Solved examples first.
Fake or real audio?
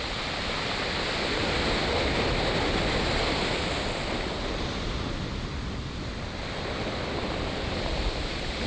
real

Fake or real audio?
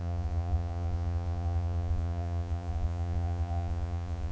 fake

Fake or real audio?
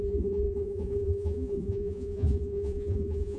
fake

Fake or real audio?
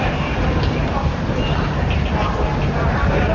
real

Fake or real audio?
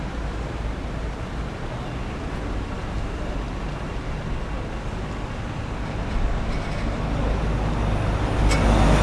real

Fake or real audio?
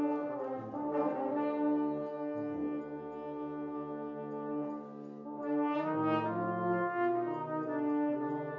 real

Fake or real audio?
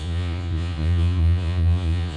fake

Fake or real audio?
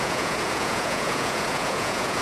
fake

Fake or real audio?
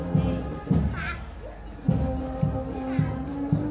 real